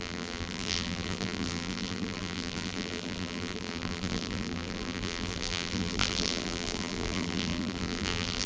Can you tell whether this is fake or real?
fake